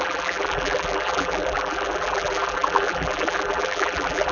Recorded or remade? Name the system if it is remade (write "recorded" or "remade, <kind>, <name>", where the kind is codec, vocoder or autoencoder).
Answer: remade, vocoder, BigVGAN v2